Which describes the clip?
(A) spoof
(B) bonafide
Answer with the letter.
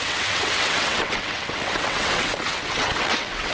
A